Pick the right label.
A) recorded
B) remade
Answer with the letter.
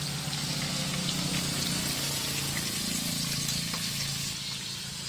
A